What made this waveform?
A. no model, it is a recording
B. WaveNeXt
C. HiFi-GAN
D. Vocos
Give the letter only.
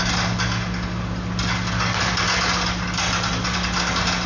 A